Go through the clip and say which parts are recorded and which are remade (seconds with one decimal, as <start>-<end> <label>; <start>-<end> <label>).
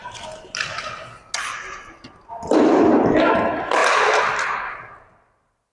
0.0-5.7 recorded